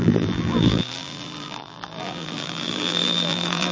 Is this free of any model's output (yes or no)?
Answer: no